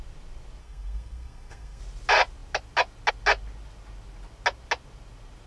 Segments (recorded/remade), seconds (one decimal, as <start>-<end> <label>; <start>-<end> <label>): 0.0-0.6 recorded; 0.6-1.8 remade; 1.8-5.5 recorded